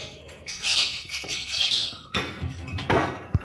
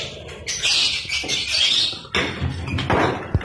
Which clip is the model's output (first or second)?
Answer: first